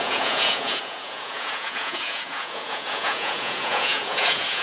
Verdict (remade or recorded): remade